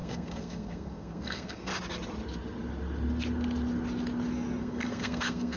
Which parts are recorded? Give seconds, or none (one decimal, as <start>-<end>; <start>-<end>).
1.7-4.6